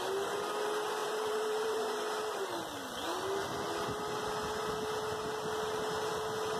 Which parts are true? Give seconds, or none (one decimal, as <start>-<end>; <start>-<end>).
0.0-1.0; 2.0-6.6